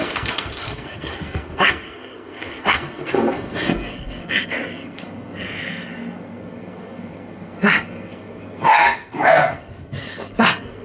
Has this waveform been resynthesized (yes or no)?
yes